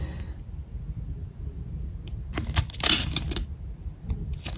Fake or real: real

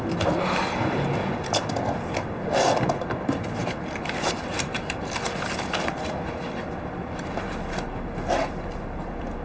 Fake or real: real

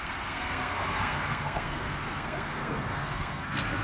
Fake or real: fake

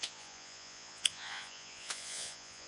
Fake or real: fake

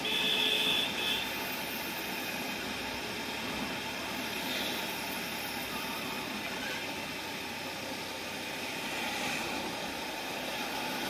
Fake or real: real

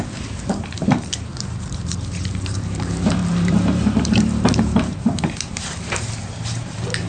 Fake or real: fake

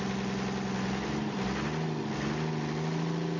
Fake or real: real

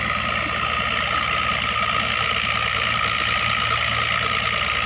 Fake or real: real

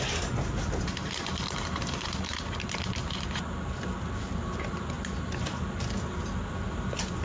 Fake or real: real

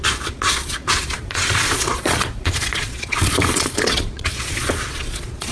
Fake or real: fake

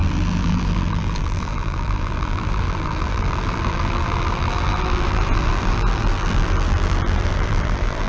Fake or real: fake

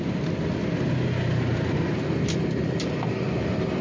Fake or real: real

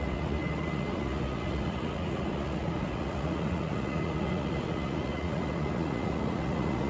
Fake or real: fake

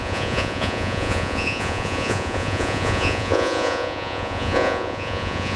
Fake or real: fake